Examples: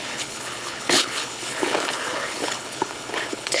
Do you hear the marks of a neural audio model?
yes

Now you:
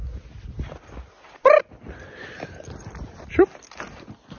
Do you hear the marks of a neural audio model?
no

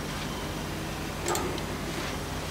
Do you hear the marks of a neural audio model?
no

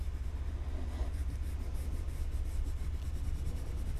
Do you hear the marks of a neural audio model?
no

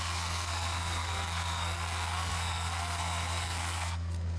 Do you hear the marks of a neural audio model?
yes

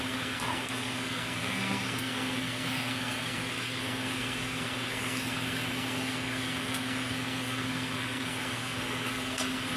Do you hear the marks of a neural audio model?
yes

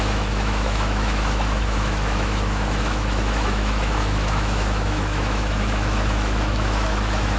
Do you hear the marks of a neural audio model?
yes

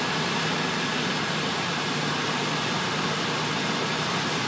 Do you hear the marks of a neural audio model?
yes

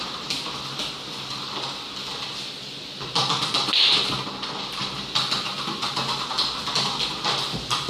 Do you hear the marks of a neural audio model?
no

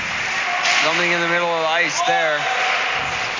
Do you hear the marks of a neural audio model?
no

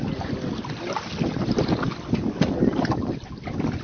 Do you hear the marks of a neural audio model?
no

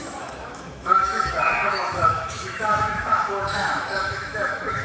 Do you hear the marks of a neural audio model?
yes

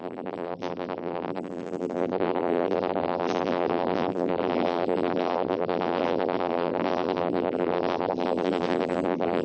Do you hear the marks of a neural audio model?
yes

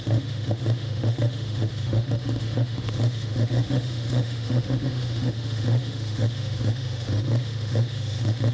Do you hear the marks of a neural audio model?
yes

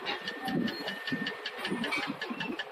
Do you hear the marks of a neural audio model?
no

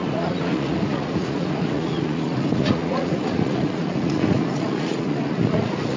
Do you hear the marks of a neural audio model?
yes